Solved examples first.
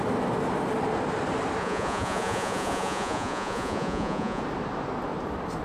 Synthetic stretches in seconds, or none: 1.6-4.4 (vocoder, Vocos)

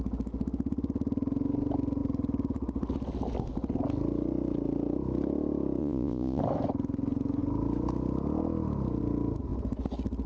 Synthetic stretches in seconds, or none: 5.8-6.4 (vocoder, Vocos)

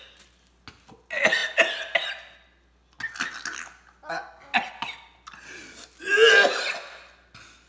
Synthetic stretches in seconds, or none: none